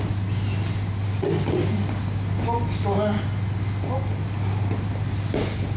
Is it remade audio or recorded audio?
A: recorded